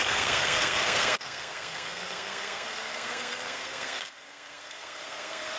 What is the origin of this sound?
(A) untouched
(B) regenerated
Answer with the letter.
B